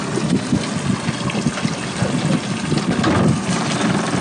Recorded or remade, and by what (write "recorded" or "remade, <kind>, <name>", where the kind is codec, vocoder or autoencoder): recorded